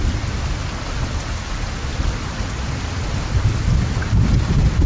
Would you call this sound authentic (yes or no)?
yes